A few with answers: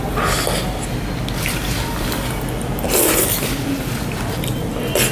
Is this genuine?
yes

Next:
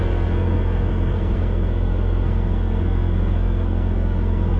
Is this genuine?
no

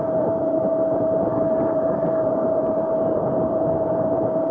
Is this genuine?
no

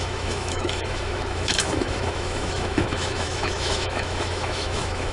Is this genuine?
no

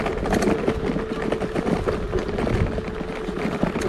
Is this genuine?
yes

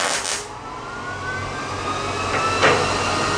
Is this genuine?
yes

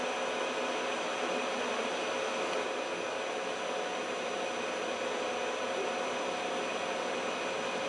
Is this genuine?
yes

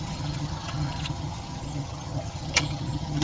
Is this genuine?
no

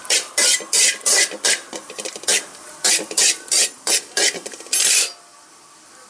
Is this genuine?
yes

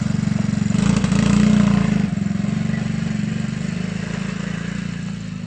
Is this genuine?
yes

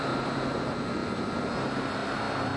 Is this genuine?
yes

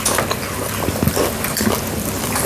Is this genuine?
yes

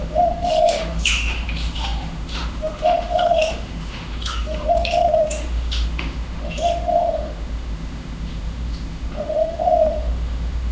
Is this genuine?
no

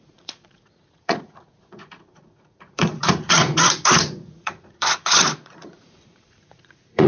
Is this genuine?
no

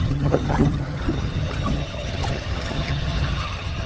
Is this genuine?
no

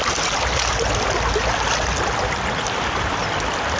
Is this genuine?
yes